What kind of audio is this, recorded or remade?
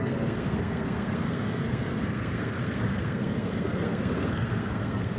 remade